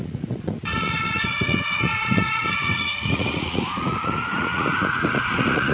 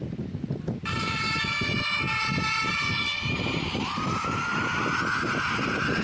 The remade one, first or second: first